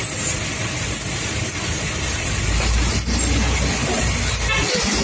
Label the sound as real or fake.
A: real